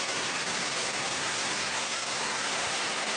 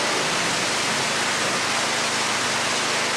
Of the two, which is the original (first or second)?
second